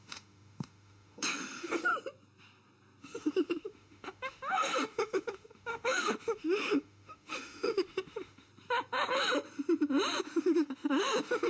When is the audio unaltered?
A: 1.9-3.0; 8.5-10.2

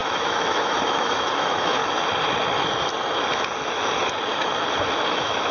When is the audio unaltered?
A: 1.8-5.1

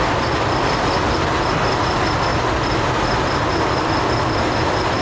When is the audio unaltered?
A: 0.0-5.0

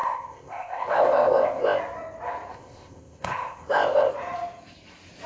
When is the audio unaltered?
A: 1.8-2.5; 4.1-5.3

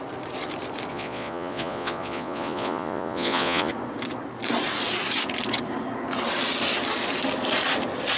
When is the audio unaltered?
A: 0.0-0.9; 3.7-8.2

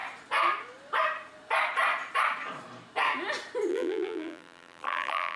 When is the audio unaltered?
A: 0.0-3.7